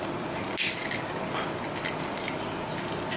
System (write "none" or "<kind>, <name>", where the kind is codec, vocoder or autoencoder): none